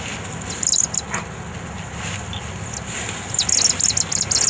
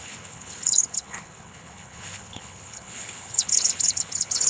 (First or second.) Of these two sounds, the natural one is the first